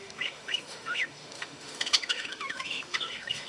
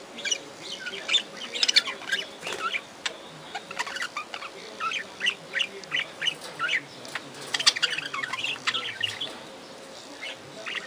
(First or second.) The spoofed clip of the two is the first